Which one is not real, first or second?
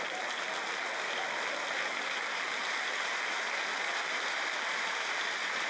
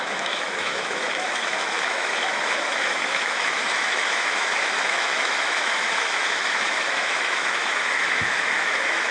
second